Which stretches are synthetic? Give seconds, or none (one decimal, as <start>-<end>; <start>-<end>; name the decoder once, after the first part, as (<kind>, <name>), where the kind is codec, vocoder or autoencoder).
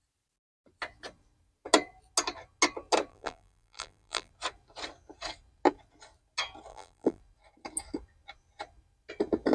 3.1-4.3 (vocoder, BigVGAN v2); 6.7-7.2